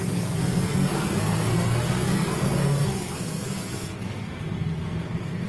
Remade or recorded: remade